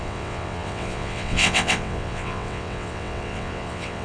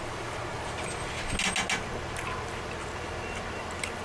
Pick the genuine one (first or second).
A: second